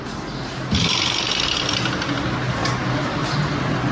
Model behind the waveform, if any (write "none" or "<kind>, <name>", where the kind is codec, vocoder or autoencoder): none